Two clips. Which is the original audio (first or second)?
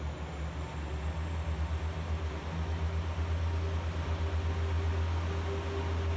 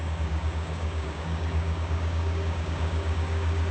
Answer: first